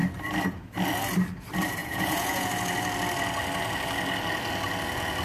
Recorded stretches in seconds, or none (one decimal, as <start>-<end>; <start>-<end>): 0.0-1.8; 2.5-5.2